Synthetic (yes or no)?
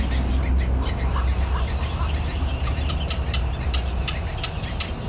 no